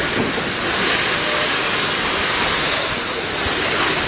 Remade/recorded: recorded